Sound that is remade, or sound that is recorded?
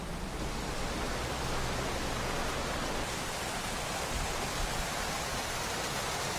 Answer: recorded